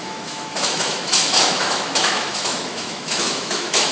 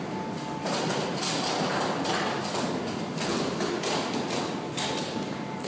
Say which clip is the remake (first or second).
first